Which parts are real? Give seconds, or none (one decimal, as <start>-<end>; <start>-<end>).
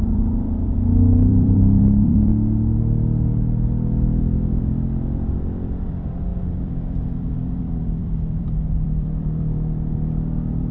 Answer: 2.3-4.2